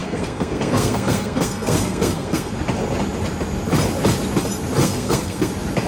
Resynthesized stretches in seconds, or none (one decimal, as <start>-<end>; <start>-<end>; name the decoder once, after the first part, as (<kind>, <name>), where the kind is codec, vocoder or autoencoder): 0.0-2.5 (codec, SNAC); 4.8-5.5